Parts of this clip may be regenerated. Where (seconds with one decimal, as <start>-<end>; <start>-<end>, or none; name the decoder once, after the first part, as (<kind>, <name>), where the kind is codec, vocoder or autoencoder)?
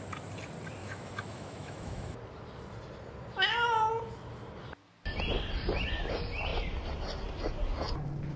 0.8-2.2 (autoencoder, DAC-VAE)